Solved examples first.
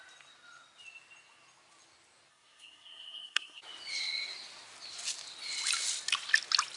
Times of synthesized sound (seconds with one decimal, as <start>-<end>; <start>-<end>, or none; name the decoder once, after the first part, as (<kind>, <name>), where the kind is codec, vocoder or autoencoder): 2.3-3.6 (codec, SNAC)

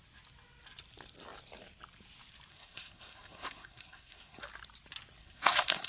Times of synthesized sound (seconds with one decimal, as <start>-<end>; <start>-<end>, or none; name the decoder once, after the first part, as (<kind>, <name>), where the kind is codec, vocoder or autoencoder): 2.5-4.4 (codec, SNAC); 5.2-5.9

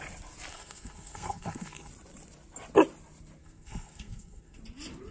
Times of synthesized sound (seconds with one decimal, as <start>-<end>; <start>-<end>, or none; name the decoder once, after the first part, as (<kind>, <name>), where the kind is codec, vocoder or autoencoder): 0.5-1.9 (codec, SNAC); 3.4-4.6

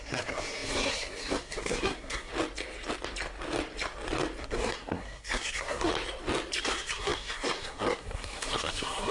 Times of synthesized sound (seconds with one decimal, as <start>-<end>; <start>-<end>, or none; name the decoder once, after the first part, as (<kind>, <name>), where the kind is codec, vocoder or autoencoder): 0.0-2.3 (codec, SNAC); 4.4-5.9; 6.6-9.1

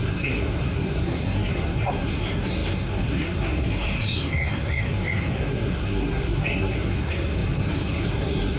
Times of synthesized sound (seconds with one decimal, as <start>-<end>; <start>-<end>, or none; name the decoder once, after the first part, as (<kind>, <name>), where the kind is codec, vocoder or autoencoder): 0.0-8.6 (codec, SNAC)